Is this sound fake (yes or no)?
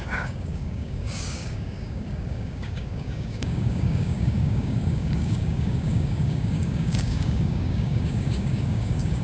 yes